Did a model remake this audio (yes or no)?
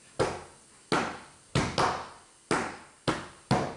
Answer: no